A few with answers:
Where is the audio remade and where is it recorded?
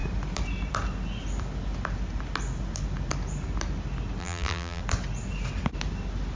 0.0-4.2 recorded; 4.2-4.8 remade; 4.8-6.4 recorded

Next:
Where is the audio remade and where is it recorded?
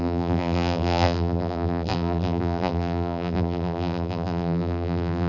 0.0-5.3 remade